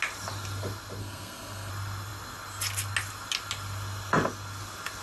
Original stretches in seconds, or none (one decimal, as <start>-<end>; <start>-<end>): 0.0-1.0; 1.7-5.0

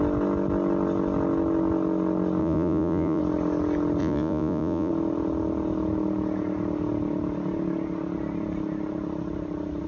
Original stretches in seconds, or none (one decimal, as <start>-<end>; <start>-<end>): 0.0-2.4; 3.2-4.0; 4.9-9.9

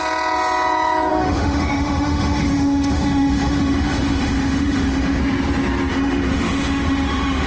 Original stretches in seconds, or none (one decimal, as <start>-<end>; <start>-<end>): 0.0-1.1; 5.2-5.9

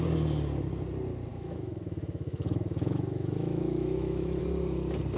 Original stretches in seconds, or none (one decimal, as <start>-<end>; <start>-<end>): 0.0-1.3; 4.4-5.2